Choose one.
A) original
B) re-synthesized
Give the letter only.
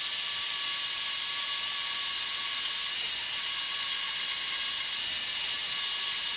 A